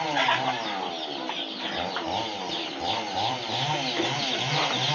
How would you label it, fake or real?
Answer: real